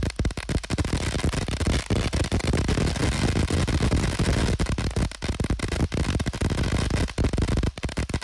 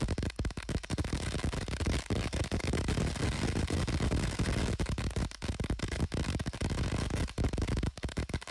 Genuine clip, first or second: first